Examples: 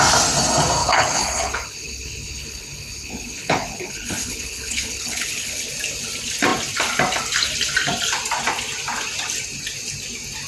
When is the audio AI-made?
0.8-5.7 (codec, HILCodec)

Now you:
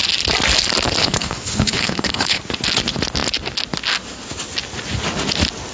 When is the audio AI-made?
1.0-2.4 (codec, HILCodec)

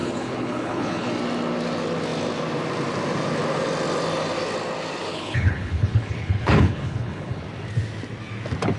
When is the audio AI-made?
0.0-1.1 (codec, HILCodec); 5.1-7.4

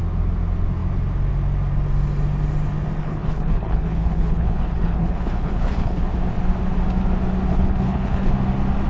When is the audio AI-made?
3.0-6.1 (codec, HILCodec); 7.5-8.3

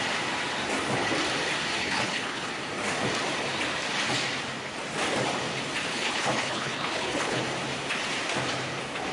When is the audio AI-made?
1.8-2.5 (codec, HILCodec); 5.9-7.4

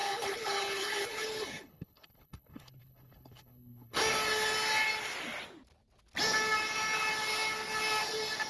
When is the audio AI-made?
0.0-4.0 (codec, HILCodec)

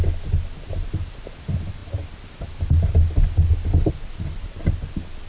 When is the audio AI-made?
none

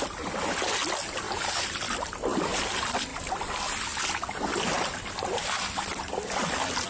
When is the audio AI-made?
none